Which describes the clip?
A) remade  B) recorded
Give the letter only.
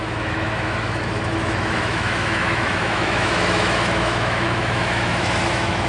A